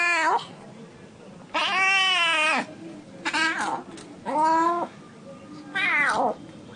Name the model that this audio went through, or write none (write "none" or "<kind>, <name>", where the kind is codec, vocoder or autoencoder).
none